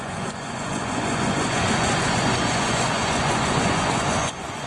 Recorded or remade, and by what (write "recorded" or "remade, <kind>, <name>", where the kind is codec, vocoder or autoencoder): remade, vocoder, Vocos